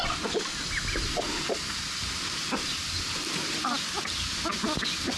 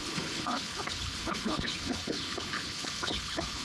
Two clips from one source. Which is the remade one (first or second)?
second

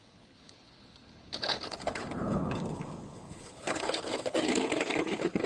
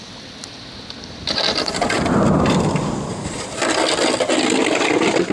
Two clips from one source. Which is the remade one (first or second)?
first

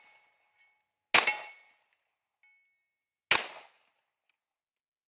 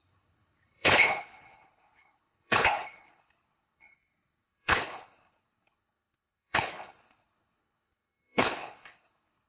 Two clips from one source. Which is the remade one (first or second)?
second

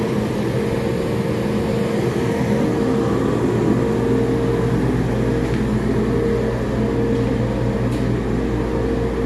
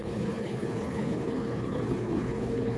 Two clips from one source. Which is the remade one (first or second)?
second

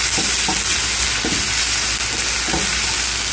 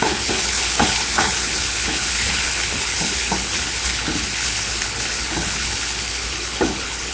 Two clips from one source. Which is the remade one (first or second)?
second